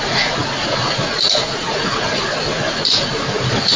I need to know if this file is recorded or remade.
remade